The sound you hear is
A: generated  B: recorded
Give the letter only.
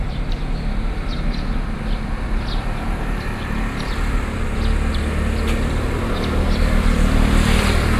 A